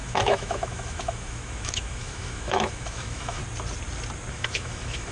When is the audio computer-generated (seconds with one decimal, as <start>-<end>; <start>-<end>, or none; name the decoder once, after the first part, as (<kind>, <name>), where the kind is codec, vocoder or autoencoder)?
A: 0.0-3.4 (autoencoder, DAC-VAE); 4.3-5.1